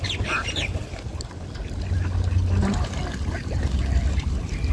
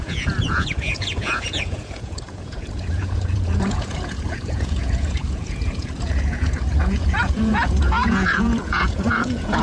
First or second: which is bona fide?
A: first